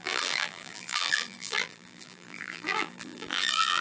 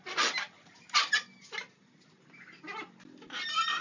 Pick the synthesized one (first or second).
first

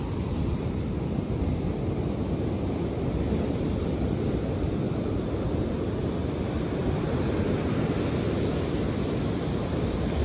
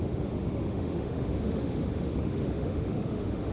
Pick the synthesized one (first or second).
second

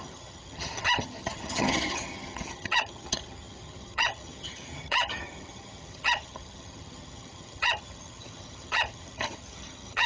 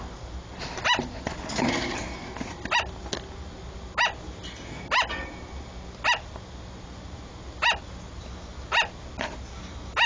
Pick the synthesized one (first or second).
first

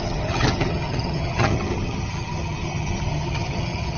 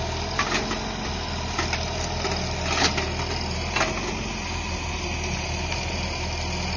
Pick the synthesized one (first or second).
first